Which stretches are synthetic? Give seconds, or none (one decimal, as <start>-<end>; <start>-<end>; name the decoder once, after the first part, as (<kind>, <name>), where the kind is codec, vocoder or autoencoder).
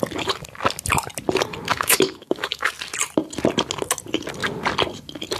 1.7-2.7 (autoencoder, DAC-VAE)